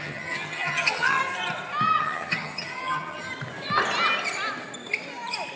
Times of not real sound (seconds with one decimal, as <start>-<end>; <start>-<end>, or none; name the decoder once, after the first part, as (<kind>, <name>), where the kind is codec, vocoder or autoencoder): 0.0-1.2 (vocoder, HiFi-GAN); 2.0-3.3